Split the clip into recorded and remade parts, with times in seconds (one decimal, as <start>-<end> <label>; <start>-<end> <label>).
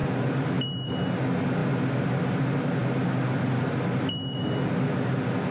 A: 0.0-5.5 recorded